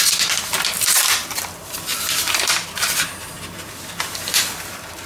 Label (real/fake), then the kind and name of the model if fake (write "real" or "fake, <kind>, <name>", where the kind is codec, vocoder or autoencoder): fake, vocoder, BigVGAN v2